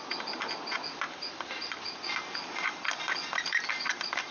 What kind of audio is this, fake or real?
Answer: real